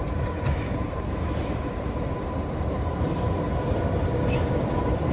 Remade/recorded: remade